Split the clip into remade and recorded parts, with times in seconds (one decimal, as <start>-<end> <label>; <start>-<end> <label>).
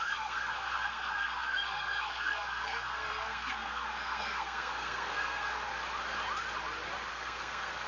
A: 0.0-5.7 remade; 5.7-7.1 recorded; 7.1-7.9 remade